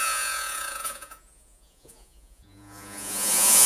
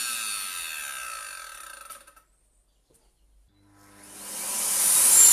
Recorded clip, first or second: second